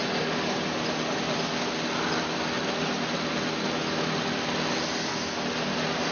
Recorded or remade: recorded